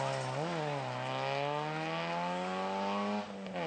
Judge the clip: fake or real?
real